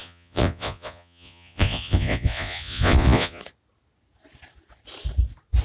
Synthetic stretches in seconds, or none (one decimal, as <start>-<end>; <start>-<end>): 0.0-3.4